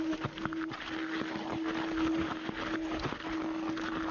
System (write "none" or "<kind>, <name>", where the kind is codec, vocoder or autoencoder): none